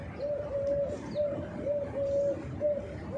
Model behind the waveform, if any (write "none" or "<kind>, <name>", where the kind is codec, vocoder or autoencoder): none